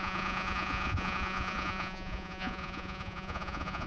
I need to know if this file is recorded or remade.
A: remade